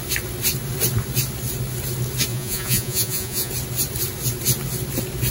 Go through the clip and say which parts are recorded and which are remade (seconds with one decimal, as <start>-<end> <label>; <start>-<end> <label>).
0.0-2.3 recorded; 2.3-3.5 remade; 3.5-5.3 recorded